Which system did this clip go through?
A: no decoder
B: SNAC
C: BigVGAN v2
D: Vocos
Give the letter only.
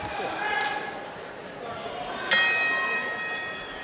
A